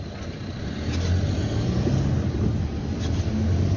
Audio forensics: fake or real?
real